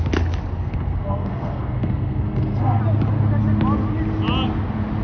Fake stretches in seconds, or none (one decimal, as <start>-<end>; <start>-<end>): 0.5-2.8